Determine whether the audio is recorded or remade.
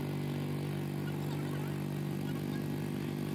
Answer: recorded